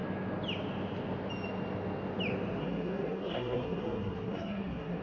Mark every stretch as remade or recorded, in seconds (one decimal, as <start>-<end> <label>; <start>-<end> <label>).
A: 0.0-2.6 recorded; 2.6-5.0 remade